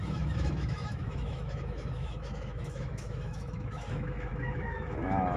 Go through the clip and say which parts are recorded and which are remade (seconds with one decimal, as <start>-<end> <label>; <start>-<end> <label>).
0.0-5.4 remade